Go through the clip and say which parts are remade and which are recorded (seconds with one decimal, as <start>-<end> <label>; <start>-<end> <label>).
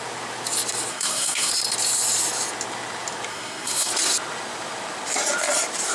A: 0.0-0.9 recorded; 0.9-1.5 remade; 1.5-3.3 recorded; 3.3-3.9 remade; 3.9-5.9 recorded